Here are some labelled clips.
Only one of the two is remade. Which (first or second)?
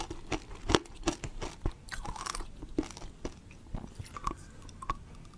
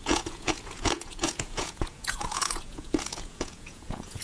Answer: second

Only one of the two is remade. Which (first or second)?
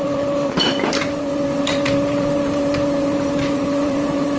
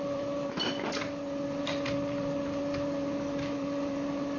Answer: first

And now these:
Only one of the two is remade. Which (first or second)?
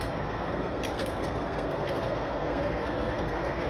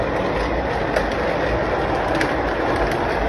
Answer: first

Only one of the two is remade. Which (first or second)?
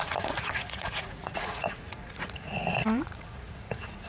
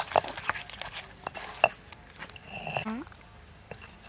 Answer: first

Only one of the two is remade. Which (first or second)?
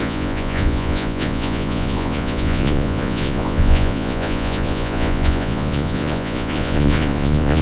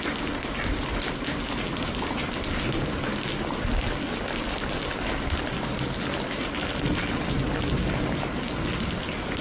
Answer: first